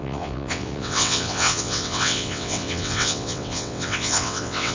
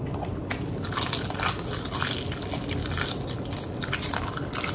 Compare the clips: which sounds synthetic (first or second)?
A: first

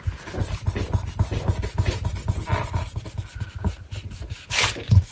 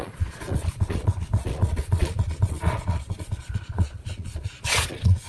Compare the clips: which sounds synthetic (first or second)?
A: second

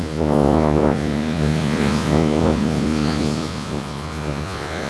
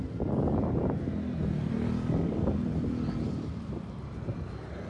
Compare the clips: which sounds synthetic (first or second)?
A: first